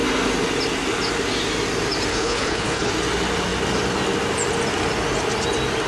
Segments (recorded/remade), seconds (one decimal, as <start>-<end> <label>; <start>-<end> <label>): 0.0-2.1 recorded; 2.1-2.9 remade; 2.9-5.9 recorded